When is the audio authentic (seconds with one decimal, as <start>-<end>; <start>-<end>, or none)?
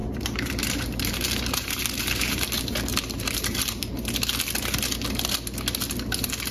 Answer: 3.9-6.5